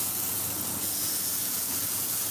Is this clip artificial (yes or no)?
yes